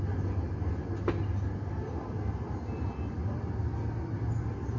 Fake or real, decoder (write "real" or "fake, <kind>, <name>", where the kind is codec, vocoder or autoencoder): real